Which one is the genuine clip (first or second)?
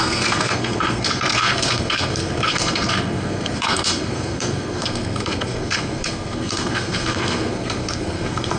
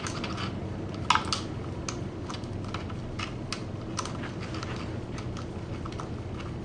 second